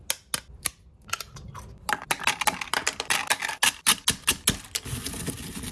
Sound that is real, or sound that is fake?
real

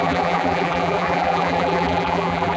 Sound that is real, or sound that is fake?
fake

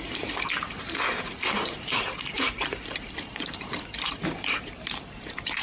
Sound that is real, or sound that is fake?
fake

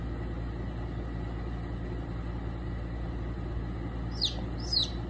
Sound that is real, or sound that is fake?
real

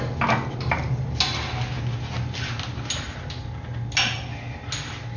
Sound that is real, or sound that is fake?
real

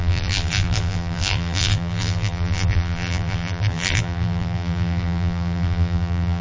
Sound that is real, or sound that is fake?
fake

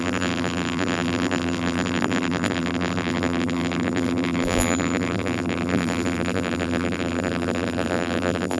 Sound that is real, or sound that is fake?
fake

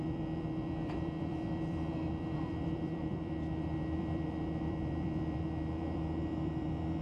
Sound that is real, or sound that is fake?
fake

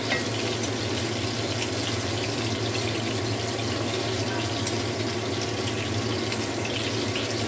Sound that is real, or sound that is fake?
real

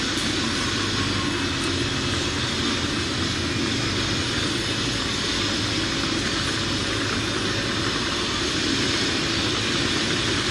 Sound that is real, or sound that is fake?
real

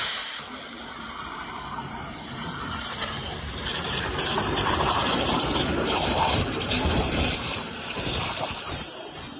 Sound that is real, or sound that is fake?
fake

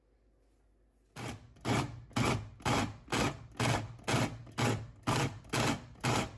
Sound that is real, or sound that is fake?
real